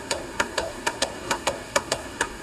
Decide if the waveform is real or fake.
fake